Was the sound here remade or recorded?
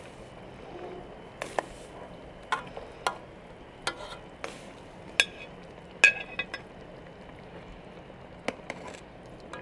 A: recorded